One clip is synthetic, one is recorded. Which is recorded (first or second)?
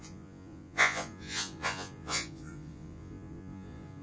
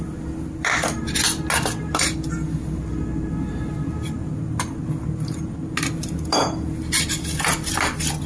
second